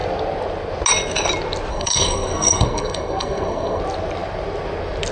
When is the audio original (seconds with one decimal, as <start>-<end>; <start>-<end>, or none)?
0.0-1.7; 3.8-5.1